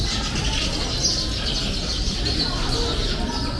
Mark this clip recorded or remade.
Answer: recorded